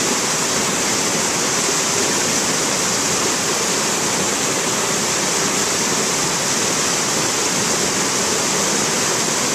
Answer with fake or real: real